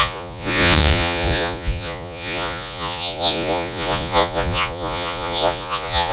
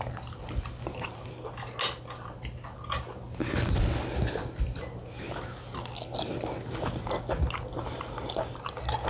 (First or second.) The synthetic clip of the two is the first